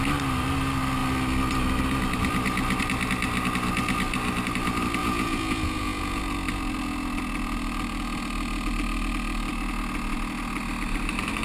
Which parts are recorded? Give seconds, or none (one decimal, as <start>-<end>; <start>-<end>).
0.0-5.0; 6.2-11.4